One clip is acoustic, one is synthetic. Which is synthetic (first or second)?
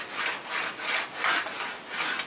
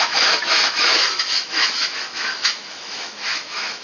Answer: second